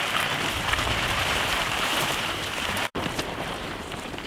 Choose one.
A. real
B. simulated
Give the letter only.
B